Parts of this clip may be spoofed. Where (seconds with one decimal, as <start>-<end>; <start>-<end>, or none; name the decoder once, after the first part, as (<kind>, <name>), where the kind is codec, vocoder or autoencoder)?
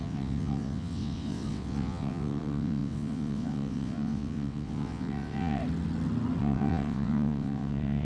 0.0-5.6 (vocoder, WaveNeXt); 6.4-8.0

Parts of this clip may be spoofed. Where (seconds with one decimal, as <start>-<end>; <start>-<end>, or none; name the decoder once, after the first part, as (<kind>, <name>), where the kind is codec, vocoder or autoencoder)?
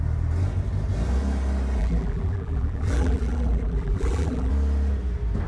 1.8-4.5 (vocoder, BigVGAN v2)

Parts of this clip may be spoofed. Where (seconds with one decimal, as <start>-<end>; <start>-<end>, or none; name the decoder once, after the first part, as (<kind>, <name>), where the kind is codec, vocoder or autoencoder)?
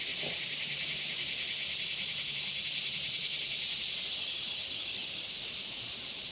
4.1-5.3 (vocoder, HiFi-GAN)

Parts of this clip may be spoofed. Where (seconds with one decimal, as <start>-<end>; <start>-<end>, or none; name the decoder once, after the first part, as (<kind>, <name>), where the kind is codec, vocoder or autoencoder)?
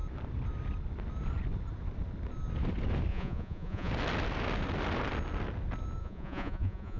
3.1-3.9 (vocoder, Vocos); 6.0-7.0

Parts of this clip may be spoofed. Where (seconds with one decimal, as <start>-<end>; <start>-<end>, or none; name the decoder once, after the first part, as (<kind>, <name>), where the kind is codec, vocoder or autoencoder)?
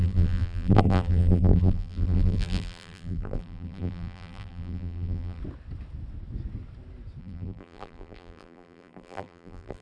0.0-5.4 (vocoder, BigVGAN v2); 7.2-9.8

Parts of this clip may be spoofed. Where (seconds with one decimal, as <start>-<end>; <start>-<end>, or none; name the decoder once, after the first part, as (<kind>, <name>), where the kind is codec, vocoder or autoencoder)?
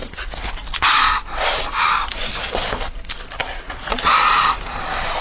0.0-0.5 (vocoder, Vocos); 3.4-3.9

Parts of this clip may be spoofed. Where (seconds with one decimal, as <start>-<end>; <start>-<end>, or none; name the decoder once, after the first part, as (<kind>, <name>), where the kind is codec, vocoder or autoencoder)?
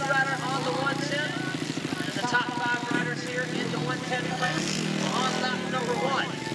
4.3-5.1 (codec, SNAC)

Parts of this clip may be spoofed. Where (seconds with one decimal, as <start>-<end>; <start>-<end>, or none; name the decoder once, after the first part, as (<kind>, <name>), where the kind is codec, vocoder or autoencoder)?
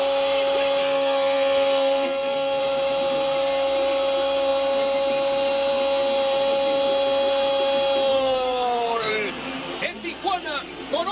0.8-2.6 (codec, SNAC); 8.1-9.1